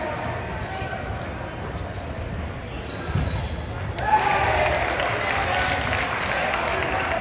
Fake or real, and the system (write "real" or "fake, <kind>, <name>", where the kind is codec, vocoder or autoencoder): real